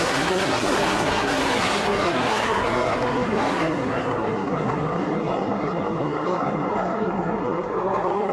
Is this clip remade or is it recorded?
remade